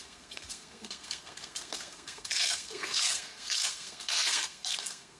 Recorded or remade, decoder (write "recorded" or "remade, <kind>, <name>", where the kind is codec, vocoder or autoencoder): remade, codec, SNAC